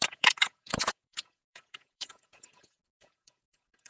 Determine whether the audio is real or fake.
fake